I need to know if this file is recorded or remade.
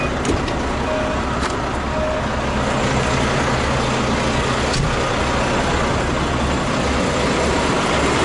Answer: recorded